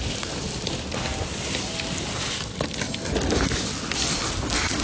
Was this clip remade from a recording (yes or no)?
no